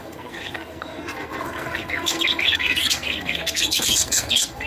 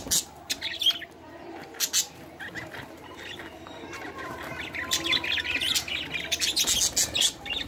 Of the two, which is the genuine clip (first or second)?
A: second